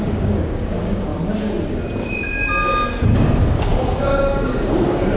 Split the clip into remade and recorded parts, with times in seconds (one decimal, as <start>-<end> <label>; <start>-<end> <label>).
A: 0.0-1.1 remade; 1.1-2.9 recorded; 2.9-5.2 remade